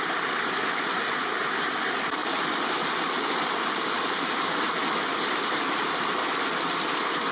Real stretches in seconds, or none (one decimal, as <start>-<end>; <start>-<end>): 0.0-0.9; 1.8-7.3